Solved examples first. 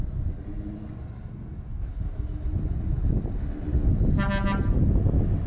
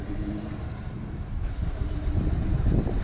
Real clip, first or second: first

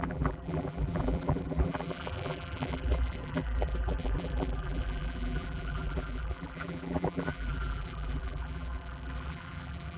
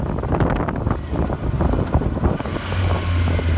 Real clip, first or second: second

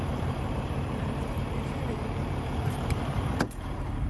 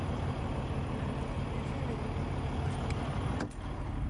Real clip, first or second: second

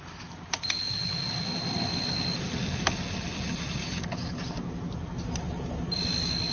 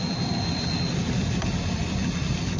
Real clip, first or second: first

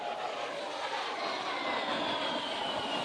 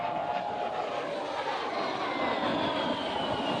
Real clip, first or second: second